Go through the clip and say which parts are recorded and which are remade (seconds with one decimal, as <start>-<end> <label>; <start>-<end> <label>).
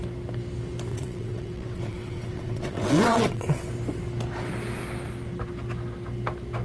0.0-0.9 recorded; 0.9-3.7 remade; 3.7-6.6 recorded